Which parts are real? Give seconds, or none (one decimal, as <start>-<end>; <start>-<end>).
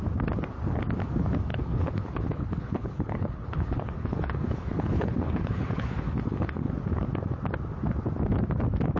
0.0-1.5; 6.7-9.0